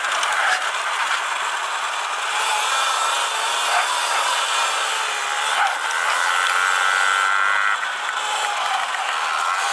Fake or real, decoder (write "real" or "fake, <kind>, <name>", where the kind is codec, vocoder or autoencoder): real